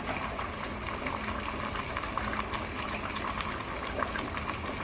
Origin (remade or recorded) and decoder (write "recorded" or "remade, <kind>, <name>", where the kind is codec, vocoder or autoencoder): recorded